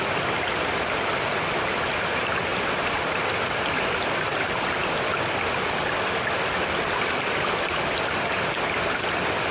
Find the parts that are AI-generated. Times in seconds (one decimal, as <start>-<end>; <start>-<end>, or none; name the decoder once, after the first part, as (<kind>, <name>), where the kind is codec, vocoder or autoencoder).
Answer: none